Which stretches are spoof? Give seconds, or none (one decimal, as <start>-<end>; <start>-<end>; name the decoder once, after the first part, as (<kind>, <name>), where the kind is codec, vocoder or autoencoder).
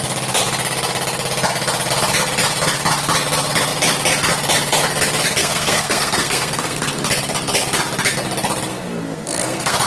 5.4-6.9 (codec, SNAC); 8.7-9.9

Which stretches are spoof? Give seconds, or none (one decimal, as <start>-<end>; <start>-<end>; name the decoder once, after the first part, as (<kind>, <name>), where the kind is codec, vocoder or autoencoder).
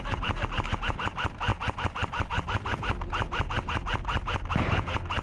none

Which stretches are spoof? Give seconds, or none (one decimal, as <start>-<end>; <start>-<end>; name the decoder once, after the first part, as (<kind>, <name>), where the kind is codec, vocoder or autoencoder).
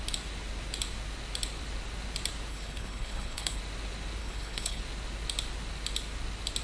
2.5-3.6 (codec, HILCodec); 4.2-4.8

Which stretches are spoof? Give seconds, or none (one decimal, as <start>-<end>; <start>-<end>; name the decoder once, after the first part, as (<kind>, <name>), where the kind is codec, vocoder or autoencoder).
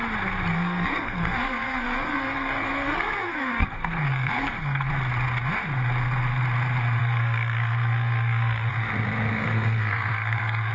0.5-4.9 (codec, SNAC); 7.0-8.7; 9.3-10.7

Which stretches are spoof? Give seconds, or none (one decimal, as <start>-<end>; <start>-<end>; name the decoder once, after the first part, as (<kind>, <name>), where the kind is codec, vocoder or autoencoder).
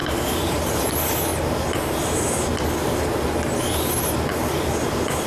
0.0-0.9 (vocoder, BigVGAN v2)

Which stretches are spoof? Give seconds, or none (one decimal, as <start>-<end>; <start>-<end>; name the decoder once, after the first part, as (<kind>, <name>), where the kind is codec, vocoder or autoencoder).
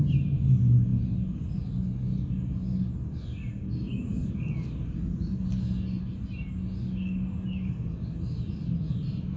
none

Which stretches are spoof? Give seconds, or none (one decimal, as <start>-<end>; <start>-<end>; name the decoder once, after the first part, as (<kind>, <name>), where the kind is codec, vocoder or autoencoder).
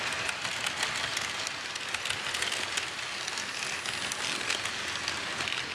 none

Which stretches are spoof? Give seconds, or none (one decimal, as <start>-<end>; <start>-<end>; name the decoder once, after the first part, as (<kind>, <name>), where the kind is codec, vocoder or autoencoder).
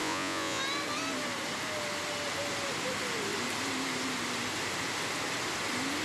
0.0-0.6 (vocoder, Vocos)